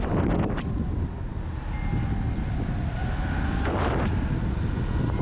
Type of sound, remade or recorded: recorded